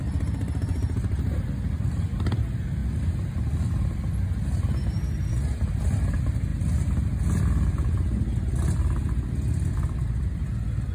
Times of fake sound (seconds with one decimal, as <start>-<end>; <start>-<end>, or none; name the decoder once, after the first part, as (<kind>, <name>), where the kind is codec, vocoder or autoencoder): none